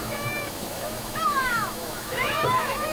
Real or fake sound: fake